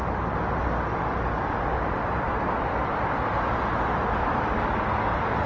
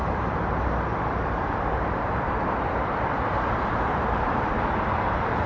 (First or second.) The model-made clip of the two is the second